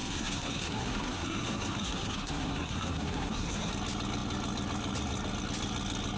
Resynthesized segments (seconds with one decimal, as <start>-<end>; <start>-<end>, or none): 0.0-3.7

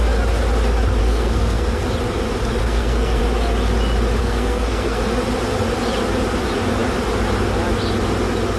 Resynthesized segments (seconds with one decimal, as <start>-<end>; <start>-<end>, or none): 1.0-1.8; 2.6-3.2; 4.2-5.0

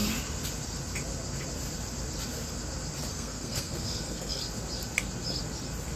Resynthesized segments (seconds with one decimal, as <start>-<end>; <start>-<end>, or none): 3.1-4.4

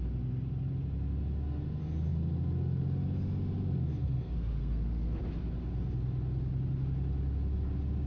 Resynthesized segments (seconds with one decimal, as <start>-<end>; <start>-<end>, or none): 4.0-5.2

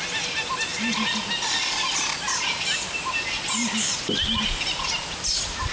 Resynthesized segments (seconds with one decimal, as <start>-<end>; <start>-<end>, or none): none

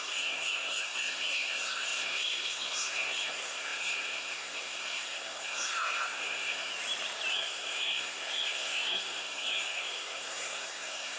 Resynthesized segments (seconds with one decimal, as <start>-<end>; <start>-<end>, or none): 0.0-6.7; 7.3-11.2

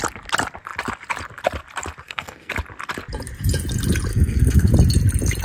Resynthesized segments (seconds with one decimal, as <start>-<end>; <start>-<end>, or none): 2.0-2.5; 4.1-4.7

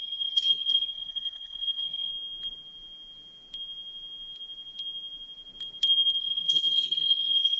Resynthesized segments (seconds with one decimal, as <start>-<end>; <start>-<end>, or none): 0.0-2.1; 6.2-7.6